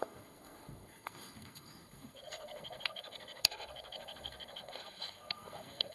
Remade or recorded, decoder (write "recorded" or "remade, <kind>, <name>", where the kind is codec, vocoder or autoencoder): remade, codec, SNAC